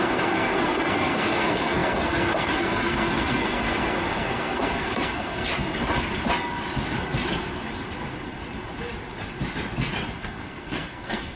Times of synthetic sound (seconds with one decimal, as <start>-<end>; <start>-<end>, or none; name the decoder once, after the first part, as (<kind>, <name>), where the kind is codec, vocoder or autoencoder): 0.0-5.5 (codec, SNAC); 10.2-11.4